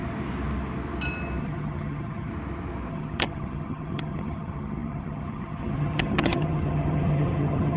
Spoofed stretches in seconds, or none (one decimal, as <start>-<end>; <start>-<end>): 1.4-2.3; 2.9-7.8